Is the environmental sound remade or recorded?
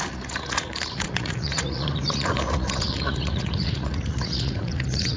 remade